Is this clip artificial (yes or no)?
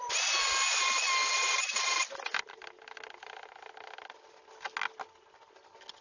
no